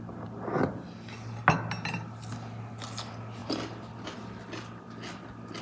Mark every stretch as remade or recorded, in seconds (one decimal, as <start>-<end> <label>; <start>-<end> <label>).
0.0-5.6 recorded